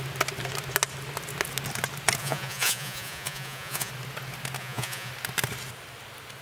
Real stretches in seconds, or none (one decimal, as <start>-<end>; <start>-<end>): 0.0-2.2; 3.9-4.6; 5.1-6.4